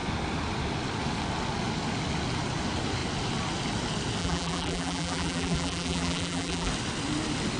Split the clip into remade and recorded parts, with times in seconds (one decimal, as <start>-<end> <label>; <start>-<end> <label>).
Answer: 0.0-4.2 recorded; 4.2-6.7 remade; 6.7-7.6 recorded